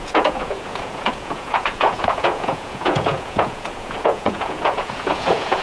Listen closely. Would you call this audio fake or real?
fake